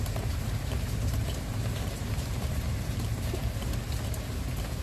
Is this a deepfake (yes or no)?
yes